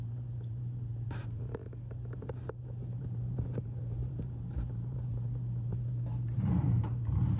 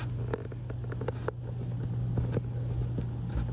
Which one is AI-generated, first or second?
first